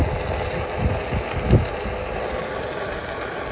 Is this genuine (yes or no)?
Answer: yes